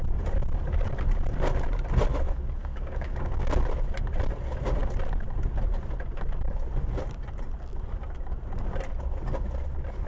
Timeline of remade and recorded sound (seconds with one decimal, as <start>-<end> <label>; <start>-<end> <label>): 0.0-2.6 recorded; 2.6-3.5 remade; 3.5-10.1 recorded